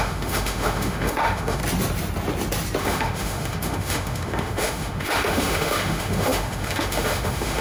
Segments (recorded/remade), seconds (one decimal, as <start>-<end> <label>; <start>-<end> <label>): 0.0-1.6 remade; 1.6-2.8 recorded; 2.8-7.6 remade